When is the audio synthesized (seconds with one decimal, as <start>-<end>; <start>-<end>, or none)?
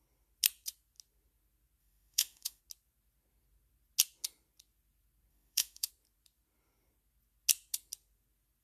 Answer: 1.8-2.6; 5.3-5.9